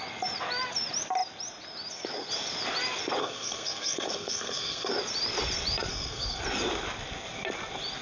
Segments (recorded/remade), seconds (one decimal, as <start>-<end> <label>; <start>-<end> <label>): 0.0-3.2 recorded; 3.2-4.9 remade; 4.9-5.9 recorded; 5.9-6.4 remade; 6.4-8.0 recorded